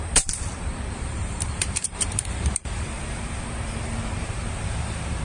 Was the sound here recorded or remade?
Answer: remade